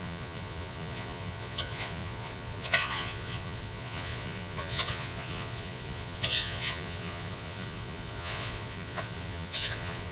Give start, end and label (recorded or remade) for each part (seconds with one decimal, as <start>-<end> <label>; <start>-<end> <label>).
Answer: 0.0-10.1 remade